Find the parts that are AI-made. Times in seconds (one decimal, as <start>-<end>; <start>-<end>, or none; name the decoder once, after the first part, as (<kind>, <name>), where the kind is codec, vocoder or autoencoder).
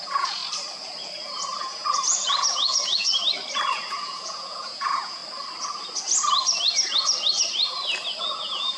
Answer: 0.0-0.4 (vocoder, Vocos); 1.6-3.1; 3.7-5.2; 8.2-8.8